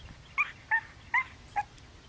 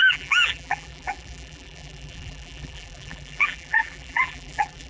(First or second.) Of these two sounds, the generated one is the second